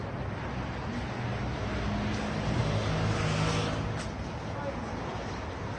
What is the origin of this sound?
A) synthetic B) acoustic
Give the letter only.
B